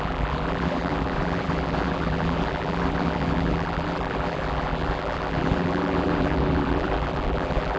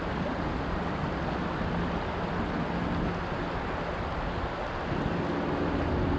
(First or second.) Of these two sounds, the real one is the second